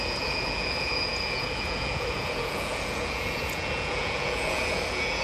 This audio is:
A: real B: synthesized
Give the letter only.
B